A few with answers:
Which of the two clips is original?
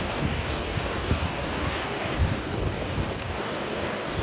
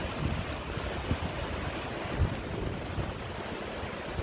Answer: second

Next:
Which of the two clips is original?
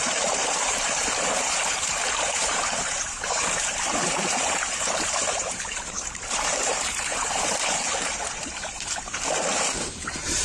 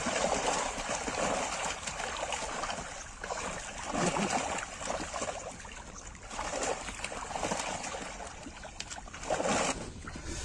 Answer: second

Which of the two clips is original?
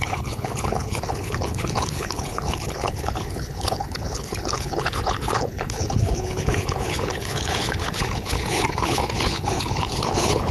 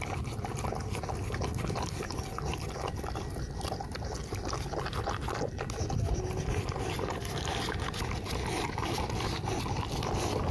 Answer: second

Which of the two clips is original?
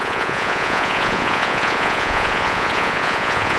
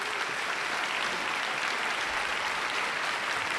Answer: second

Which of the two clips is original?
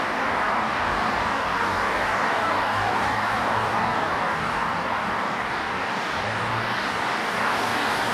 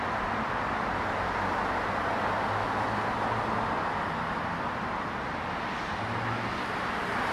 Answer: second